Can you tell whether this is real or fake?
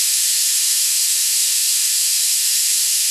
fake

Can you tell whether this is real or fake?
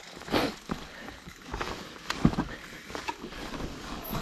fake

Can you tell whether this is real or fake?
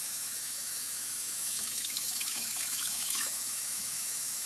fake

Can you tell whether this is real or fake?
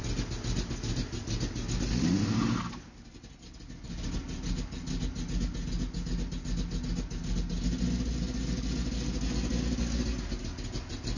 real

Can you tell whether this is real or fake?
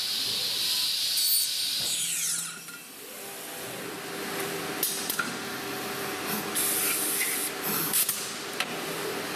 real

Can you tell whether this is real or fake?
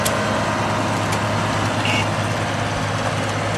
real